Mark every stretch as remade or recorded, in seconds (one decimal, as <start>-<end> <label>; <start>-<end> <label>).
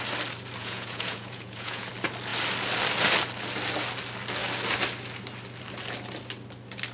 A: 0.0-0.6 recorded; 0.6-1.9 remade; 1.9-6.9 recorded